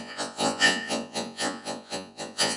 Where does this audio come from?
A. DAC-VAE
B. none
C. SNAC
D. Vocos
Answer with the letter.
D